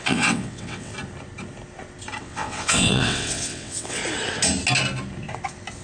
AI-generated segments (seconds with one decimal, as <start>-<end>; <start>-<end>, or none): 0.0-0.9; 2.2-4.0